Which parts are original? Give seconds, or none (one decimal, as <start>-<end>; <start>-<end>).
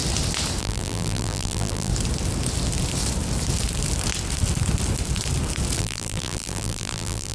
0.0-0.6; 1.9-5.8